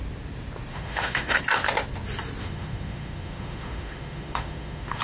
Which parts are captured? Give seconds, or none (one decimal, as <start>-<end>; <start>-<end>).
0.0-0.7; 1.4-2.4